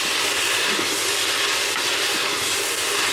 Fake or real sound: real